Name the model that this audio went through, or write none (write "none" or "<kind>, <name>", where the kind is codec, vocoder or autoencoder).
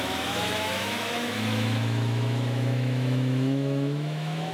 autoencoder, DAC-VAE